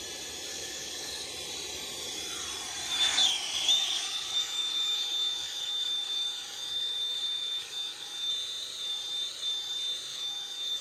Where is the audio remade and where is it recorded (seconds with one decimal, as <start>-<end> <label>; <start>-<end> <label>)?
0.0-0.5 recorded; 0.5-1.3 remade; 1.3-3.1 recorded; 3.1-8.3 remade; 8.3-10.1 recorded; 10.1-10.8 remade